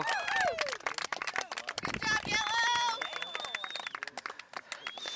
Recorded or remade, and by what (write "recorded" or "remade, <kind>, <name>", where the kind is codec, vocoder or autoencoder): recorded